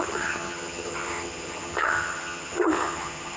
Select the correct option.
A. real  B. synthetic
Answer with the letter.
B